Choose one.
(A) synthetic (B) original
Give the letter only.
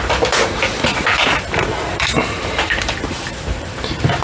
A